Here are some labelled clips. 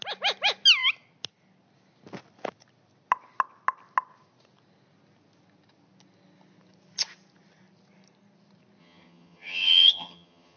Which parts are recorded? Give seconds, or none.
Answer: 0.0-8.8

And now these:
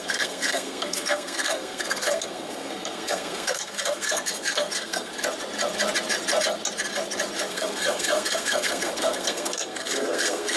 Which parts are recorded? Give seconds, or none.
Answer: 5.1-7.5

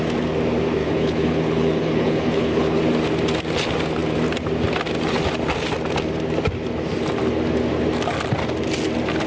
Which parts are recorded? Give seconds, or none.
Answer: 0.0-0.8; 2.8-9.3

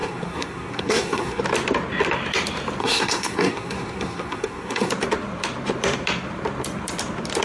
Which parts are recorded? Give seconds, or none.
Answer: 1.4-2.8; 4.9-7.4

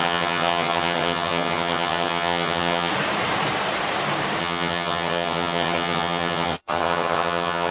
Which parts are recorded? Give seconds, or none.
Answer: 2.9-4.4

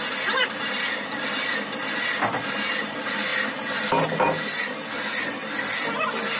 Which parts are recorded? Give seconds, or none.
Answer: 0.0-6.4

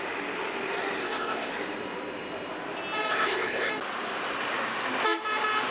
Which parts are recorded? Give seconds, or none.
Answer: 0.0-1.0; 1.5-3.1; 3.7-5.7

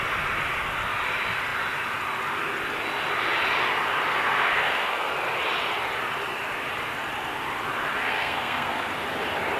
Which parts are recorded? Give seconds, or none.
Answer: 0.0-4.1; 5.1-7.9; 8.9-9.6